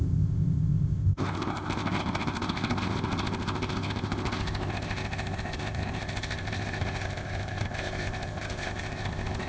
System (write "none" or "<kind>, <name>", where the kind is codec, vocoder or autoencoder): codec, ZipCodec